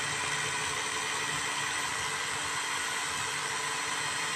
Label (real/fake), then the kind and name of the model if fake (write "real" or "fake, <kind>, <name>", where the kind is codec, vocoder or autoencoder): real